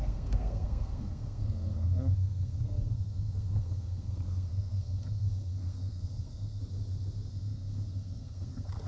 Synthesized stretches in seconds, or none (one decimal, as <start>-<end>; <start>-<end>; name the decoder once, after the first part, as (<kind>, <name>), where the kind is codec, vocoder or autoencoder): 0.0-6.6 (codec, SNAC); 7.3-8.9